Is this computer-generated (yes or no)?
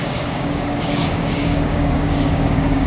yes